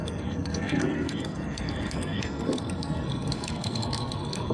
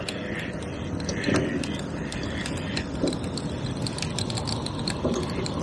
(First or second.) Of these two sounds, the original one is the second